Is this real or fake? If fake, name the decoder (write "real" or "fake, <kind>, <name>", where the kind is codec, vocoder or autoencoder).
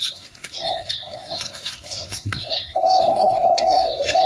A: fake, codec, SNAC